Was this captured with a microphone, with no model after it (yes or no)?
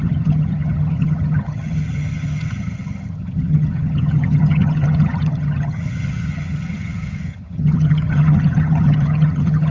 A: no